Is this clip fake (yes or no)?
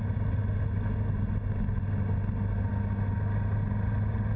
no